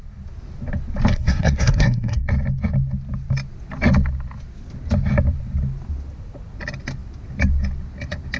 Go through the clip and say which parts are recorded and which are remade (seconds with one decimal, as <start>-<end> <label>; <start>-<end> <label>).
0.0-1.1 recorded; 1.1-2.2 remade; 2.2-8.4 recorded